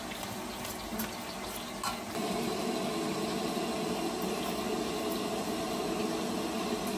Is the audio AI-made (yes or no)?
no